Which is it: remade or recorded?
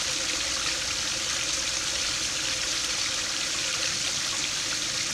recorded